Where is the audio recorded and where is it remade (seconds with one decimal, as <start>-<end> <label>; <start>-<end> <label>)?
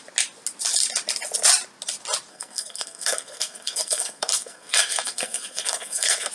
0.0-2.3 recorded; 2.3-6.3 remade